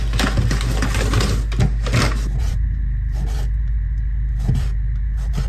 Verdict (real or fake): real